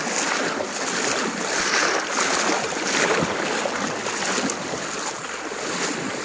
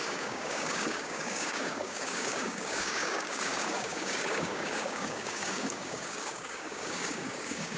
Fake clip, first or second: second